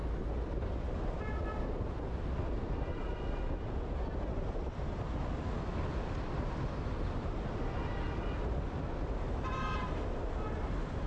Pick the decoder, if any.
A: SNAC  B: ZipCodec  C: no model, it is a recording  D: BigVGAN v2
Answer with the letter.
C